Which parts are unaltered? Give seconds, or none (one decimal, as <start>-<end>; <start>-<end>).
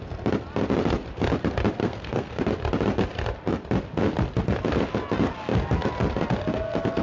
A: 0.0-1.8; 2.5-7.0